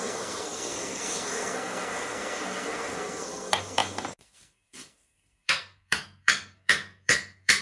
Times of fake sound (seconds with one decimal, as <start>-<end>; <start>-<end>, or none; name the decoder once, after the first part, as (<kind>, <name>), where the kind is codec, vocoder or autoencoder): 0.0-7.6 (codec, SNAC)